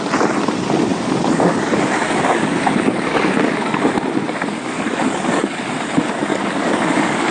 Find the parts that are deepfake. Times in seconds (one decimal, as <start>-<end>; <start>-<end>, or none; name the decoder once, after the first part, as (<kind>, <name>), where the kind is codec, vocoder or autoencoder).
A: 0.9-3.8 (codec, DAC); 4.5-5.7; 6.3-7.3